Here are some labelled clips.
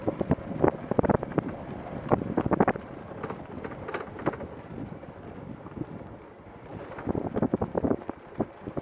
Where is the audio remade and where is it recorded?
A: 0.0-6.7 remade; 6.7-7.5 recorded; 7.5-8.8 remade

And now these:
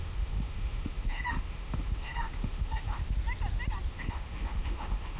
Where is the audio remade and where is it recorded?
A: 0.0-3.0 remade; 3.0-3.9 recorded; 3.9-5.2 remade

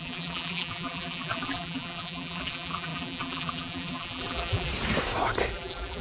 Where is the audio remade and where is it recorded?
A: 0.0-4.7 remade; 4.7-5.5 recorded; 5.5-6.0 remade